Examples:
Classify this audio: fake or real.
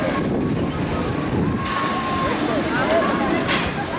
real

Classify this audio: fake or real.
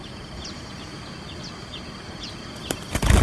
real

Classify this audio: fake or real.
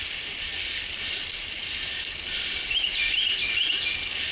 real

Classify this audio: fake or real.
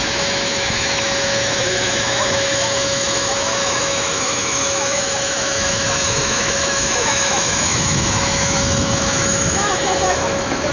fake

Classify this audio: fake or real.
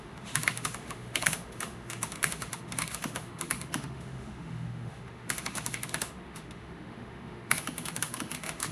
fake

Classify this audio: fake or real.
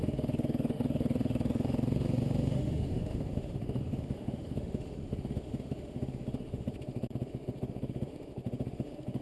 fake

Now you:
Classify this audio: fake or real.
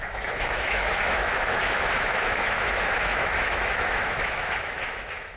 fake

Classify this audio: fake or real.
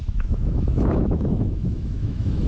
fake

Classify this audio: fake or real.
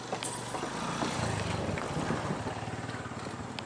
real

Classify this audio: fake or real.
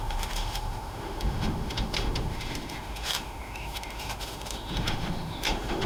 fake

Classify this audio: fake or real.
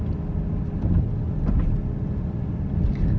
real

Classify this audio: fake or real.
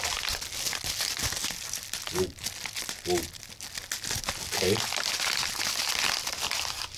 real